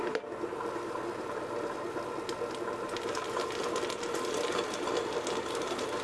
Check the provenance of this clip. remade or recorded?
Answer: recorded